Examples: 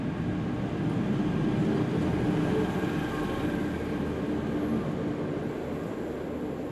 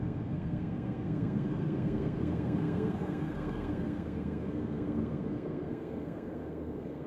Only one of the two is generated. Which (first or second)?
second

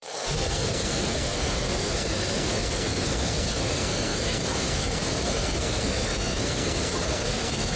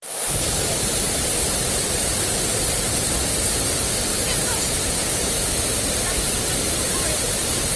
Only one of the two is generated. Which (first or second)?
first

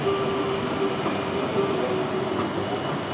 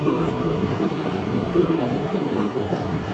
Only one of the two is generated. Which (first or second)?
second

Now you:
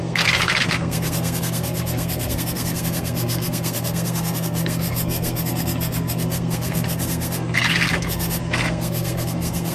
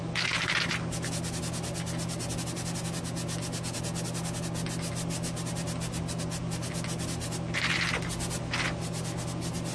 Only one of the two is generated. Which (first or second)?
first